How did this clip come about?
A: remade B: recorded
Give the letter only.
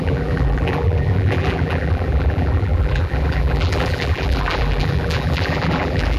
A